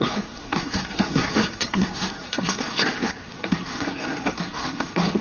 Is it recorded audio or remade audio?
remade